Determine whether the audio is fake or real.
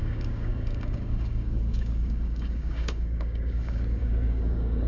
fake